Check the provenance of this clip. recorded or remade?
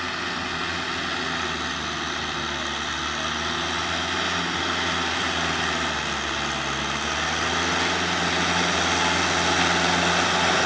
recorded